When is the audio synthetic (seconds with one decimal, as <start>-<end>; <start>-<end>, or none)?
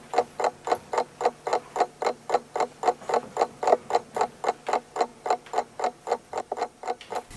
none